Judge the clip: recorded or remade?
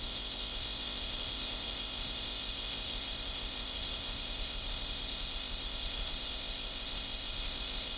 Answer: remade